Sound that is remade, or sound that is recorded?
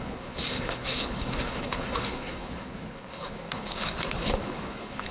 remade